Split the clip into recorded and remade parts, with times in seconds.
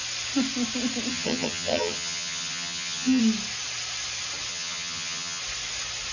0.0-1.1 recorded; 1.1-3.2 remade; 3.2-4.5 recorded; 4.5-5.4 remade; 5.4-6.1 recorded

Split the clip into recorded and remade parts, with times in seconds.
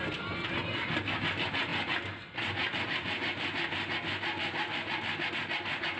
0.0-6.0 recorded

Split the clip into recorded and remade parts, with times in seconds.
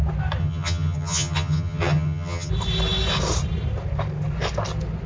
0.0-0.4 recorded; 0.4-2.5 remade; 2.5-5.1 recorded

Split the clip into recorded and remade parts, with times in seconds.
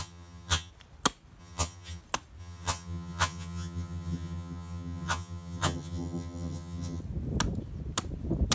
0.0-0.7 remade; 0.7-1.4 recorded; 1.4-2.0 remade; 2.0-2.4 recorded; 2.4-7.0 remade; 7.0-8.5 recorded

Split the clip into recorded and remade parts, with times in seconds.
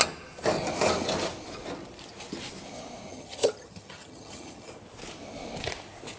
0.0-3.1 recorded; 3.1-4.7 remade; 4.7-6.2 recorded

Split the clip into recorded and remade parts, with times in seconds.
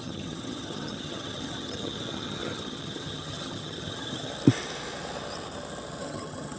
0.0-4.3 remade; 4.3-6.0 recorded; 6.0-6.6 remade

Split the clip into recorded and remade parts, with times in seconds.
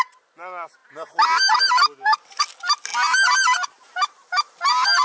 0.0-5.0 recorded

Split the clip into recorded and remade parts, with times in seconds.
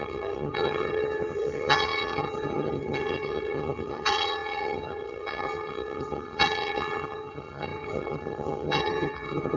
0.0-9.6 remade